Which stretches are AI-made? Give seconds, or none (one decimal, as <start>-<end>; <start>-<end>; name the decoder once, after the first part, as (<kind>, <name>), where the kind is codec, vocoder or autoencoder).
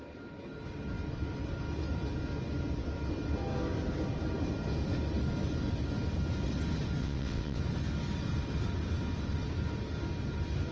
7.0-7.6 (vocoder, WaveNeXt)